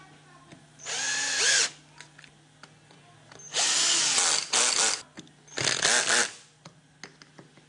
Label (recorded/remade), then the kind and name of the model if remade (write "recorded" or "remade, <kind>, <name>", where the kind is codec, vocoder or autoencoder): recorded